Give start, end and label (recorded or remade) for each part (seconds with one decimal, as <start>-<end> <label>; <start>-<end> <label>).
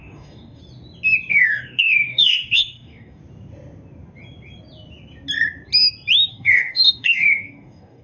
0.0-0.6 remade; 0.6-1.3 recorded; 1.3-3.2 remade; 3.2-6.3 recorded; 6.3-8.0 remade